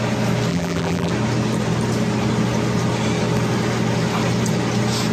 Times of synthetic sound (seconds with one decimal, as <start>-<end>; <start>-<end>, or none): 0.5-1.1